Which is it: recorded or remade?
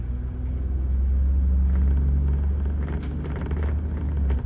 recorded